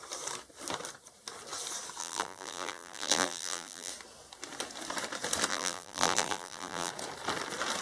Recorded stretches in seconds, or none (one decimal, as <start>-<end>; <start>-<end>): 0.0-2.0; 3.9-5.5; 6.9-7.8